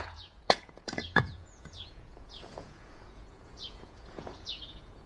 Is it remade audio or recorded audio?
remade